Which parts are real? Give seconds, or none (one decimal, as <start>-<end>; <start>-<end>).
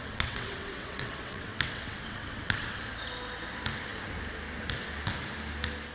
2.8-5.9